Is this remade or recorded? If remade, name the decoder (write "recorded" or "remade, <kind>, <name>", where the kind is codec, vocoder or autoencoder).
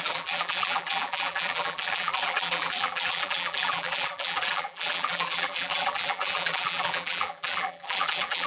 remade, vocoder, BigVGAN v2